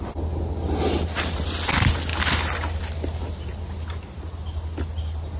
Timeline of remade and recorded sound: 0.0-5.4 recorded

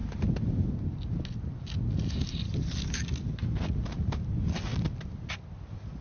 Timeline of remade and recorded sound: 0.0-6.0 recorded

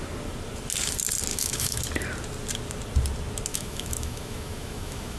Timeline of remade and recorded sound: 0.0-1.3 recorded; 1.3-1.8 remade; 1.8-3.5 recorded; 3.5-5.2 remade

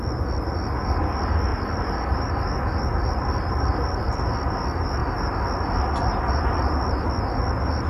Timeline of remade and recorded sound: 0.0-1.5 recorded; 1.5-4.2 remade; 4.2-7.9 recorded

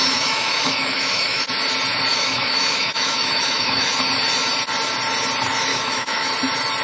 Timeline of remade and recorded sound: 0.0-1.4 remade; 1.4-2.1 recorded; 2.1-3.9 remade; 3.9-5.7 recorded; 5.7-6.3 remade; 6.3-6.8 recorded

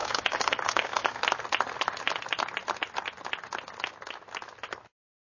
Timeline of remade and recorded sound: 0.0-1.2 remade; 1.2-5.4 recorded

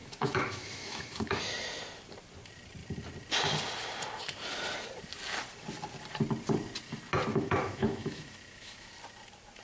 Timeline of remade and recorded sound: 0.0-1.4 remade; 1.4-7.3 recorded; 7.3-8.9 remade; 8.9-9.6 recorded